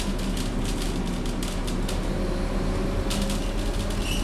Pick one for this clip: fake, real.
real